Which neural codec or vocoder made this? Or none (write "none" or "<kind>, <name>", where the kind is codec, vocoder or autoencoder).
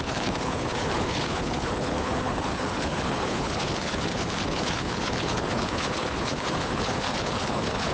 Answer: codec, HILCodec